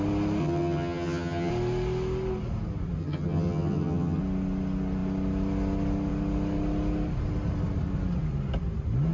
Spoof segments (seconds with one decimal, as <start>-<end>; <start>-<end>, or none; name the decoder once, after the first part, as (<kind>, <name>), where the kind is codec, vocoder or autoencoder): 0.4-1.5 (vocoder, HiFi-GAN); 3.0-4.2

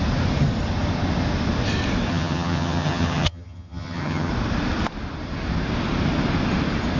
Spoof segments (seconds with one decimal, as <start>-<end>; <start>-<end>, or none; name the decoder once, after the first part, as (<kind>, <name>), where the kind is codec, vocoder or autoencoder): 2.1-4.3 (vocoder, HiFi-GAN)

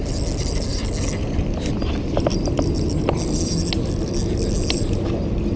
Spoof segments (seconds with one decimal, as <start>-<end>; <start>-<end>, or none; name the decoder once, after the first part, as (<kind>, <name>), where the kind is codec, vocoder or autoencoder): none

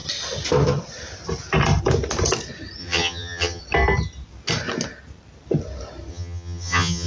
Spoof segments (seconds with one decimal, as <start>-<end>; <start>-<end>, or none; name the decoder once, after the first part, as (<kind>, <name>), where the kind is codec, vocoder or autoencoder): 2.8-3.6 (vocoder, HiFi-GAN); 6.1-7.1

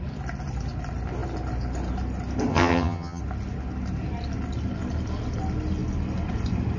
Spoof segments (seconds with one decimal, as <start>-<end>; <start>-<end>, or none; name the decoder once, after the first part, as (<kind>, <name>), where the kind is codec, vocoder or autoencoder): 2.5-3.2 (vocoder, HiFi-GAN)

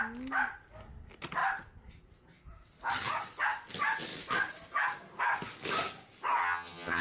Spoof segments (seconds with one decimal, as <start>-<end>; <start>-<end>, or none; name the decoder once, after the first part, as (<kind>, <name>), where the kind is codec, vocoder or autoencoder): 6.4-7.0 (vocoder, HiFi-GAN)

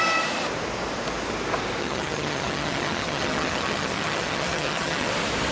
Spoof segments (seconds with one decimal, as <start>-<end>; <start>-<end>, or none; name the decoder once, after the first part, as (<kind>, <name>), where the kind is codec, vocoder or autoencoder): 1.8-5.1 (vocoder, HiFi-GAN)